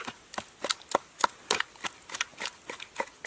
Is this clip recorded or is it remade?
recorded